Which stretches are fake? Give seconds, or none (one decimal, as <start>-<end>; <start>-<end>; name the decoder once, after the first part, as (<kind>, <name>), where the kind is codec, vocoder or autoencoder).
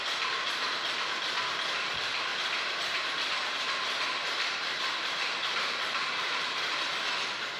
2.3-6.9 (vocoder, BigVGAN v2)